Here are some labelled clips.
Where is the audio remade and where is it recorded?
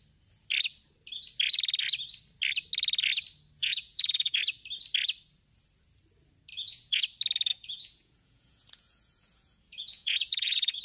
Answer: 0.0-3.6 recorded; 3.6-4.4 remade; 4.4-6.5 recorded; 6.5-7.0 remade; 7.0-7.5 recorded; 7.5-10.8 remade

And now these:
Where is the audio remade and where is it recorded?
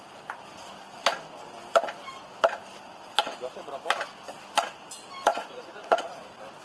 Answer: 0.0-5.3 recorded; 5.3-6.0 remade; 6.0-6.6 recorded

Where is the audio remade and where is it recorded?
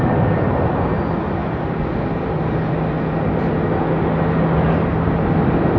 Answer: 0.0-5.8 recorded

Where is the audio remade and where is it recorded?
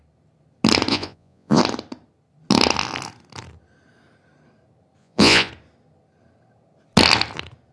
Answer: 0.0-0.9 recorded; 0.9-1.6 remade; 1.6-5.0 recorded; 5.0-5.5 remade; 5.5-7.7 recorded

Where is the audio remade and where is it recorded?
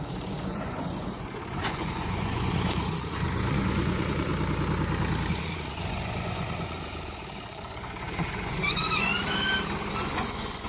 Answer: 0.0-4.3 remade; 4.3-5.3 recorded; 5.3-9.1 remade; 9.1-9.9 recorded; 9.9-10.7 remade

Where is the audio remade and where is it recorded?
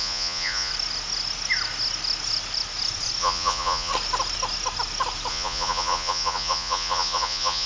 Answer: 0.0-0.7 remade; 0.7-3.2 recorded; 3.2-3.9 remade; 3.9-5.3 recorded; 5.3-7.7 remade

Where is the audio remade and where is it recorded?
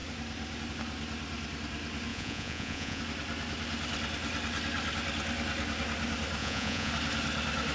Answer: 0.0-2.1 recorded; 2.1-3.0 remade; 3.0-6.4 recorded; 6.4-6.9 remade; 6.9-7.7 recorded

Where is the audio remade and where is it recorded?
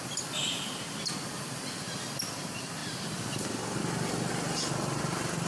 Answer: 0.0-5.5 recorded